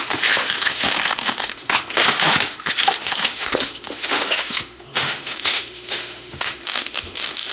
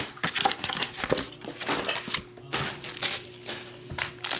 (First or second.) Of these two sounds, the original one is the second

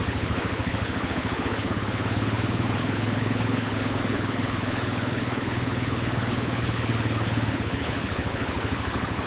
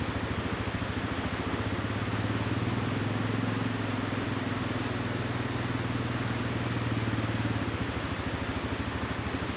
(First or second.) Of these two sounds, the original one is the second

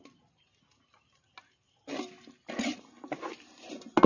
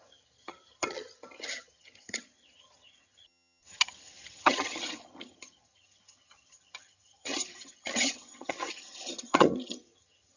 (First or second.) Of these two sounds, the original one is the first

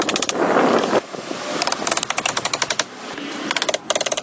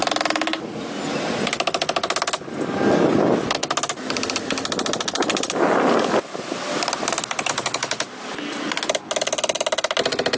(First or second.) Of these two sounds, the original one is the second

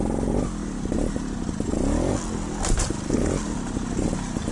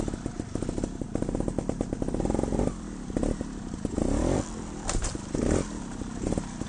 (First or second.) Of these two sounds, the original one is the first